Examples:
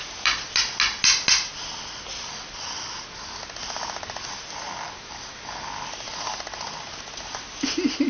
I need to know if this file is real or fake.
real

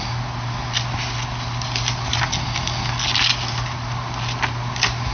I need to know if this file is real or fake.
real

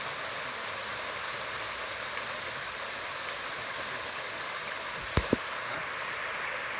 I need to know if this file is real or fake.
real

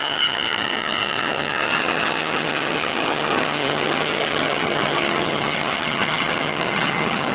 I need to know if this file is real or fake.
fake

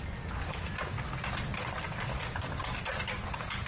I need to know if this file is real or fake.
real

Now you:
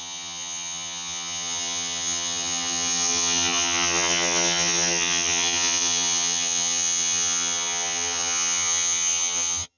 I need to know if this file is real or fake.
fake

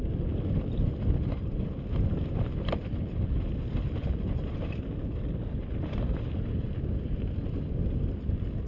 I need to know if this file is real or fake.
real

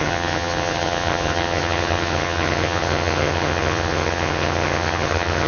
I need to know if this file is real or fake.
fake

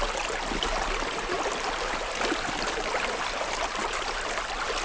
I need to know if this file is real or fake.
real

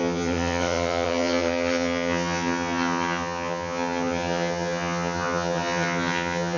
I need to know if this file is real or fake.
fake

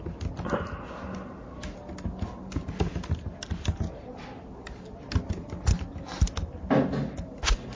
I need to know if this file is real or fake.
real